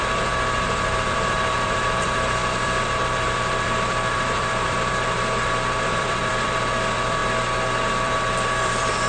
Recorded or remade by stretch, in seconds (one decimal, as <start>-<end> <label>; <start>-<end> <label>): 0.0-7.2 remade; 7.2-7.9 recorded; 7.9-9.1 remade